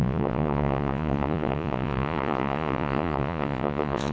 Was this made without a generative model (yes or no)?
no